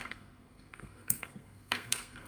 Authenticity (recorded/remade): remade